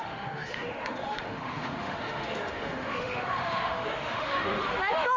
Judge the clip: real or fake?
fake